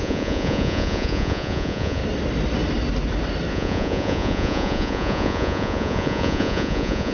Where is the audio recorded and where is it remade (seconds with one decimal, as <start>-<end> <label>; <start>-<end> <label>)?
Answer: 0.0-2.0 remade; 2.0-3.5 recorded; 3.5-7.1 remade